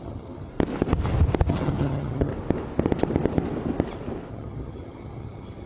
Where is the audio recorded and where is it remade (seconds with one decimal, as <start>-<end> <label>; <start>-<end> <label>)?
0.0-0.5 remade; 0.5-1.5 recorded; 1.5-2.3 remade; 2.3-4.3 recorded; 4.3-5.7 remade